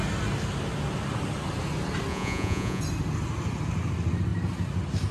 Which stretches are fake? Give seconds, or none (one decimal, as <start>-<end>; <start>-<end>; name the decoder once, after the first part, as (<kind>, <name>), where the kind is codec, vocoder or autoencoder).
2.1-2.8 (vocoder, Vocos)

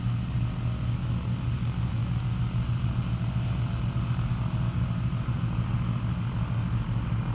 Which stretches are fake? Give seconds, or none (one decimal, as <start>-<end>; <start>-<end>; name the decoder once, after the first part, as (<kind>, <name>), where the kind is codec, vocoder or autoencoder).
none

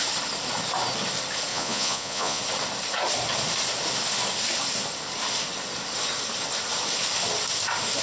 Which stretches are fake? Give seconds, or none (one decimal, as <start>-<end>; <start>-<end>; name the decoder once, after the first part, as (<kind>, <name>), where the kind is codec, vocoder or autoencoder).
1.5-2.4 (vocoder, Vocos)

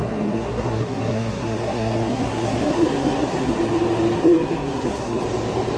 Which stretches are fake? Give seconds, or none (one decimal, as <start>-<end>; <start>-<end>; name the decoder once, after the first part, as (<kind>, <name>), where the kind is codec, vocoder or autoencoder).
0.0-3.5 (codec, SNAC); 4.2-5.2

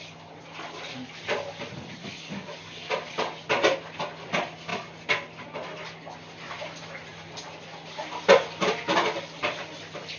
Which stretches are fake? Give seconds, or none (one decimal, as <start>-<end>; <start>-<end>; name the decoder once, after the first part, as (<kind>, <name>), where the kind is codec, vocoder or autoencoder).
2.0-2.9 (codec, DAC)

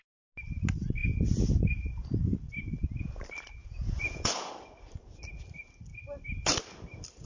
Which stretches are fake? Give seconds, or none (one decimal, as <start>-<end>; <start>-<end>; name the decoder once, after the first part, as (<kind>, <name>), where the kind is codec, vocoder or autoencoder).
3.6-4.5 (vocoder, Vocos)

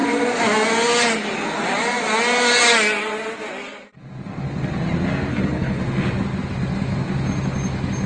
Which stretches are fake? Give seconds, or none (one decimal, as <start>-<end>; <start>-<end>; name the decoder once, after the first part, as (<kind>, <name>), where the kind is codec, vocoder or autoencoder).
5.3-5.8 (codec, HILCodec)

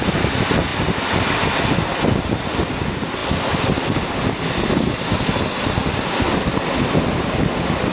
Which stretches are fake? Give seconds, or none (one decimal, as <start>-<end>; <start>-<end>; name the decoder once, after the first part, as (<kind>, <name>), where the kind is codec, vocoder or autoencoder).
none